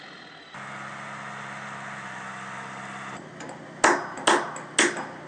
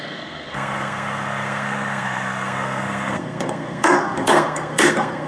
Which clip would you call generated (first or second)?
second